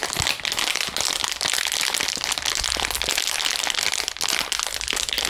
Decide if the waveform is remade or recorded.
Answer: recorded